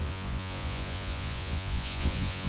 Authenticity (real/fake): fake